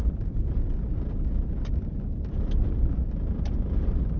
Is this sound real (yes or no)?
yes